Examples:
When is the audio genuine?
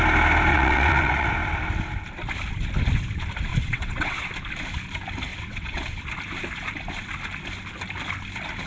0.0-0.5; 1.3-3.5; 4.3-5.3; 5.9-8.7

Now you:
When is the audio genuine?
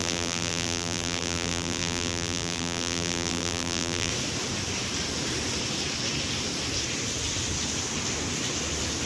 4.1-9.1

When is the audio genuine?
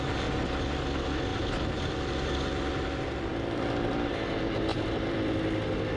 0.0-3.3; 4.1-4.7; 5.4-6.0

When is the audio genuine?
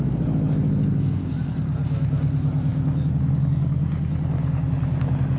0.0-5.4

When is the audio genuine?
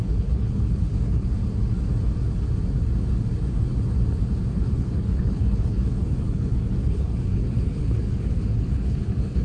1.4-4.5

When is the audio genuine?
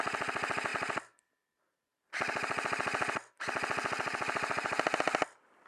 0.0-0.7; 1.2-1.9; 5.0-5.7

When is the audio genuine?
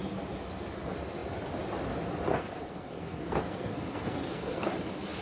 0.0-2.3; 4.7-5.2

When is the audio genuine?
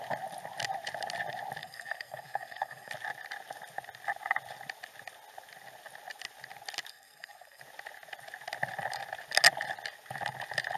0.0-1.6; 2.9-6.9; 7.6-10.8